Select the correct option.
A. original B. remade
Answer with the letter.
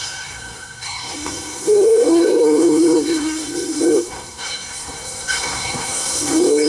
B